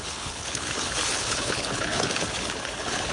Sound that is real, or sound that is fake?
fake